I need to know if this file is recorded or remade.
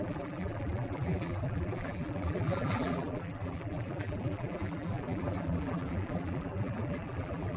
remade